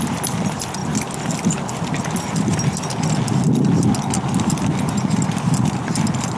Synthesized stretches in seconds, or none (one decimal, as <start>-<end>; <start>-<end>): none